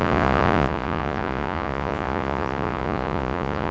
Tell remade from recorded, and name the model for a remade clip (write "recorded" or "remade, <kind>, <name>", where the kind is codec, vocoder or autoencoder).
remade, vocoder, Vocos